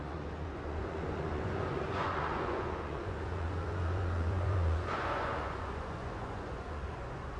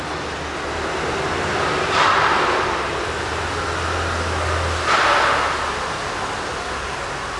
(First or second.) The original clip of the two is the second